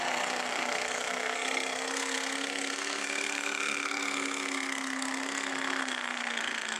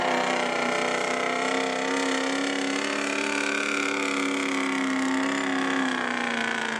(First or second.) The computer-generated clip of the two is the first